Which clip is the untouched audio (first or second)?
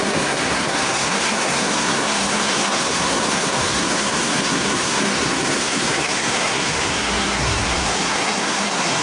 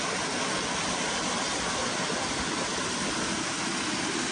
second